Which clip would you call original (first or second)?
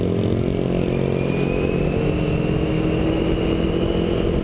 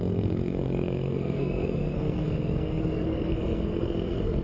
first